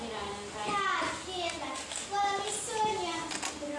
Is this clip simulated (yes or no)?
no